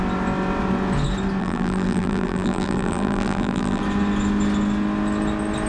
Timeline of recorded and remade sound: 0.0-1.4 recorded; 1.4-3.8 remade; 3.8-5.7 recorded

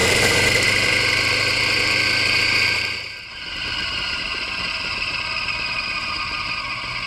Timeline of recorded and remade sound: 0.0-4.2 remade; 4.2-7.1 recorded

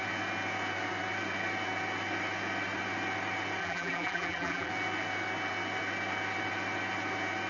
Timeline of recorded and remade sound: 0.0-3.6 recorded; 3.6-4.7 remade; 4.7-7.5 recorded

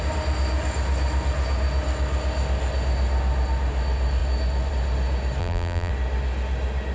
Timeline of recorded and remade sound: 0.0-5.4 recorded; 5.4-5.9 remade; 5.9-6.9 recorded

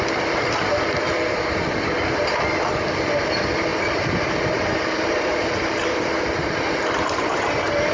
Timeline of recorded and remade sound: 0.0-3.7 recorded; 3.7-7.5 remade; 7.5-7.9 recorded

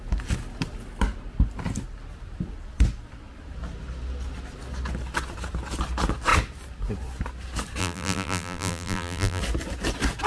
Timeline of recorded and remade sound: 0.0-7.8 recorded; 7.8-9.4 remade; 9.4-10.3 recorded

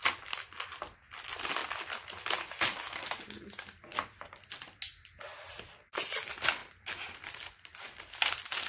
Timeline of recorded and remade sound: 0.0-8.7 recorded